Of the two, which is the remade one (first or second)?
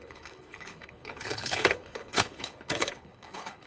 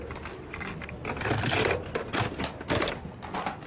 first